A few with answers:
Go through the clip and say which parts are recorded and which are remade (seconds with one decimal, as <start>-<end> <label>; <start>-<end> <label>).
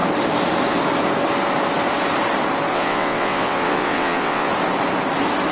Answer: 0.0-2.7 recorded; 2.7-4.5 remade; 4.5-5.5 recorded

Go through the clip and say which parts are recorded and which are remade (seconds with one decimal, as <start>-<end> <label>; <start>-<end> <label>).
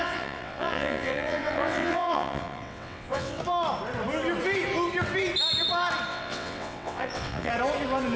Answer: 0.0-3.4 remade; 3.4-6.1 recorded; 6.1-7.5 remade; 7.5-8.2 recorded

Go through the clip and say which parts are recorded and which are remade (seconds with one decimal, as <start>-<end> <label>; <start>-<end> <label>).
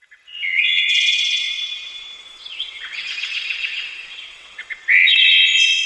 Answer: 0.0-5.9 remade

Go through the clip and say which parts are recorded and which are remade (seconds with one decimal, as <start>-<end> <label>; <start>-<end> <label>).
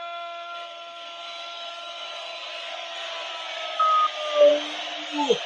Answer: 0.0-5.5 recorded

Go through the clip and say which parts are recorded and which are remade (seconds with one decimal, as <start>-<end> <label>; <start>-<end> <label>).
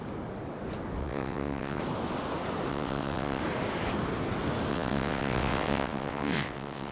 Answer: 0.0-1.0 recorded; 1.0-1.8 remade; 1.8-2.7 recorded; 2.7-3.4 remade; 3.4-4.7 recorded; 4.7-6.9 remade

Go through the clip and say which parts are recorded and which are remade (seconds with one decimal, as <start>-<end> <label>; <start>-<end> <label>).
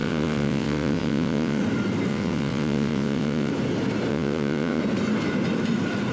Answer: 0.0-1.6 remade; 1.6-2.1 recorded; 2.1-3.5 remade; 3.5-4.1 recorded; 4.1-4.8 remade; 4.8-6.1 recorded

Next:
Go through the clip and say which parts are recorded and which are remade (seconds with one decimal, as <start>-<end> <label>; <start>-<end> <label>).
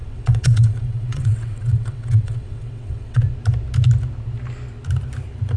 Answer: 0.0-3.2 remade; 3.2-5.6 recorded